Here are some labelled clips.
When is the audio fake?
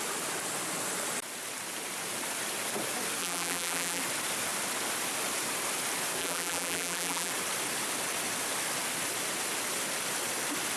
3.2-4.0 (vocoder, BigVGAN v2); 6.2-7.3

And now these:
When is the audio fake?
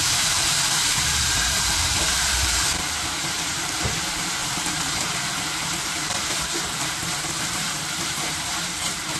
0.0-9.2 (vocoder, BigVGAN v2)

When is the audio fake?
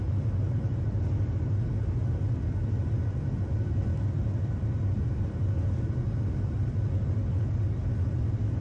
0.0-8.6 (vocoder, BigVGAN v2)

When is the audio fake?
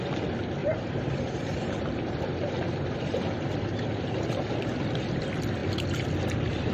0.6-4.6 (vocoder, BigVGAN v2)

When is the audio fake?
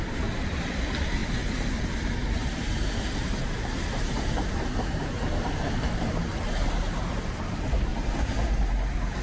0.0-7.9 (vocoder, BigVGAN v2)